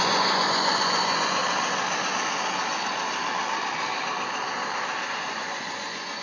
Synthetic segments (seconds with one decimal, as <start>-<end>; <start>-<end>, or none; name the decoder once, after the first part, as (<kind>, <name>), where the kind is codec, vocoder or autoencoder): 0.0-1.4 (vocoder, Vocos); 5.1-6.2